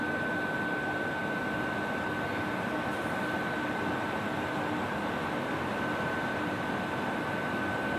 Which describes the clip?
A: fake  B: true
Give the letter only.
B